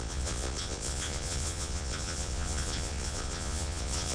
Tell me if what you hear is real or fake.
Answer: fake